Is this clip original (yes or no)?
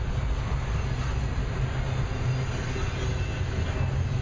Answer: yes